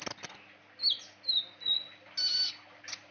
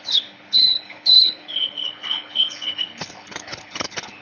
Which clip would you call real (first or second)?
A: first